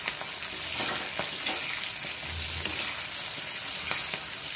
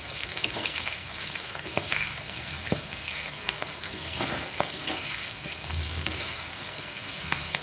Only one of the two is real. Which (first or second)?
first